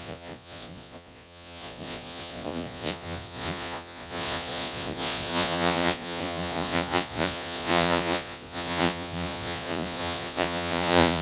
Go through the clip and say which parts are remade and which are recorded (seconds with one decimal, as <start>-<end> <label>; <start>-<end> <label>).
0.0-11.2 remade